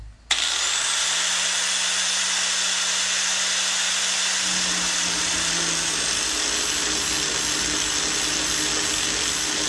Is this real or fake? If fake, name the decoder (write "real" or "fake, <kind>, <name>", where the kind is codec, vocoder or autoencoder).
real